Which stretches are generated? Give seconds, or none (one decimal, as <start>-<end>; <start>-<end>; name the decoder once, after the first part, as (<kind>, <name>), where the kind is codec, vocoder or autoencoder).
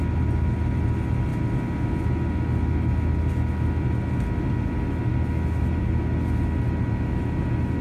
none